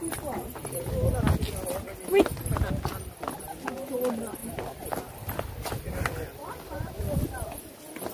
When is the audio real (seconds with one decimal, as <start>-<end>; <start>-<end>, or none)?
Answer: 0.0-4.4; 7.2-8.1